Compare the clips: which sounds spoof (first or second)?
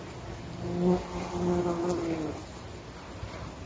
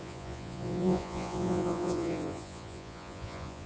second